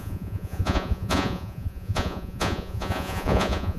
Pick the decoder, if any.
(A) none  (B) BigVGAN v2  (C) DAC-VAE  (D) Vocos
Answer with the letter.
D